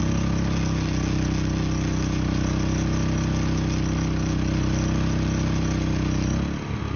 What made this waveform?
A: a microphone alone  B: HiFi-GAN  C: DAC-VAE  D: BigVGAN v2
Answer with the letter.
A